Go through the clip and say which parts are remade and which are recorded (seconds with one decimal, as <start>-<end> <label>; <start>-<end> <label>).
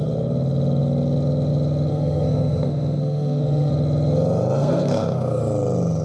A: 0.0-1.9 recorded; 1.9-3.7 remade; 3.7-4.6 recorded; 4.6-5.4 remade; 5.4-6.0 recorded